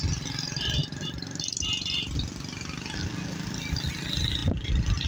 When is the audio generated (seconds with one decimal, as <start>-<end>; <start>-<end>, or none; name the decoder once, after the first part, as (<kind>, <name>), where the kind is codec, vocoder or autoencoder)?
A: 0.0-5.1 (vocoder, BigVGAN v2)